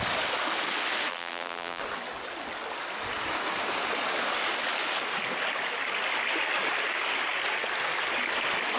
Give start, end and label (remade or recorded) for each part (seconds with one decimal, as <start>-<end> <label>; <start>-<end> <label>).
0.0-1.1 recorded; 1.1-1.8 remade; 1.8-8.8 recorded